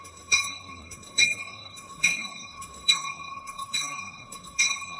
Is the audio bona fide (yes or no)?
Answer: no